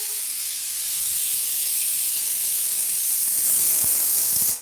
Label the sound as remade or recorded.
remade